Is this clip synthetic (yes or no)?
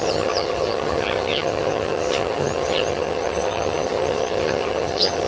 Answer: yes